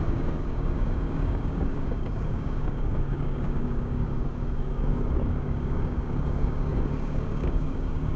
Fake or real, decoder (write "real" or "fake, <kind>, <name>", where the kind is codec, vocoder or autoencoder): fake, codec, DAC